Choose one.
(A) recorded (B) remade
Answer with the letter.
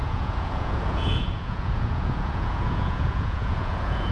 B